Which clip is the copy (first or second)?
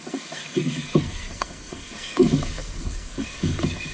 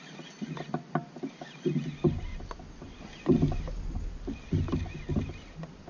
first